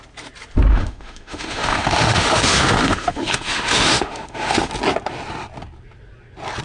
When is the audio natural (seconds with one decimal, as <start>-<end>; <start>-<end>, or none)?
0.0-0.7; 4.7-6.6